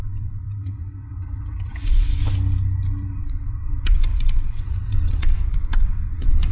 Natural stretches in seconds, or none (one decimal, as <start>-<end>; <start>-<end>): 2.2-3.2

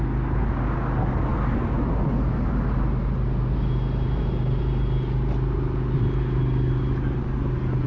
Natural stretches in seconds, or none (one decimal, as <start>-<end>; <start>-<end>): 0.0-7.9

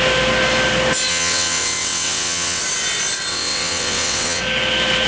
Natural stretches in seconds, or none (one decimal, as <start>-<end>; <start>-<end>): 0.0-1.1; 2.6-3.3; 4.4-5.1

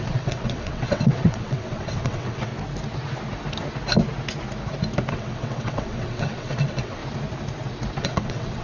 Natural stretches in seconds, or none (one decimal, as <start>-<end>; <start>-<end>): 2.5-5.1; 7.0-8.0

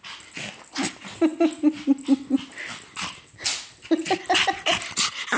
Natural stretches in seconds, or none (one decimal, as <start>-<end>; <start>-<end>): 0.0-5.4

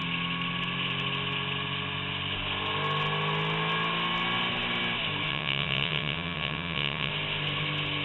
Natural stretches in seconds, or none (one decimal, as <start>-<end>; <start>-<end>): 0.0-5.3; 7.1-8.0